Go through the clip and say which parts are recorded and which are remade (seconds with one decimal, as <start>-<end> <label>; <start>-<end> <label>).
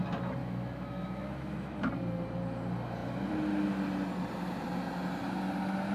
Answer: 0.0-0.4 recorded; 0.4-1.9 remade; 1.9-5.9 recorded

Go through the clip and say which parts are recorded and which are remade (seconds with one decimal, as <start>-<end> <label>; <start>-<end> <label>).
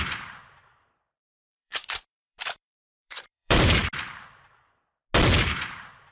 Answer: 0.0-3.8 remade; 3.8-5.4 recorded; 5.4-6.1 remade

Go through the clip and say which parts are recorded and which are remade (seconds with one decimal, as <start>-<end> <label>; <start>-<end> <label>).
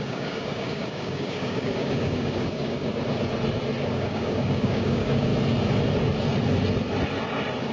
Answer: 0.0-2.9 remade; 2.9-3.9 recorded; 3.9-5.3 remade; 5.3-7.7 recorded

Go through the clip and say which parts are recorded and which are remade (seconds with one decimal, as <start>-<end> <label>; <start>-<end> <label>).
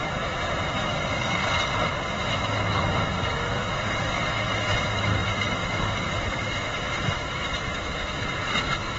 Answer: 0.0-1.4 remade; 1.4-2.1 recorded; 2.1-9.0 remade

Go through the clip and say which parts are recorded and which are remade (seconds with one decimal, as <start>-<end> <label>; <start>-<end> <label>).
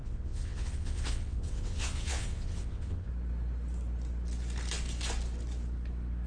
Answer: 0.0-3.1 remade; 3.1-6.3 recorded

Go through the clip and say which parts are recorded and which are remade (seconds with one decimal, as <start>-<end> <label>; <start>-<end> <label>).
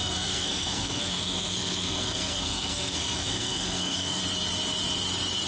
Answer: 0.0-4.2 remade; 4.2-5.5 recorded